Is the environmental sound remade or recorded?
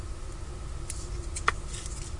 recorded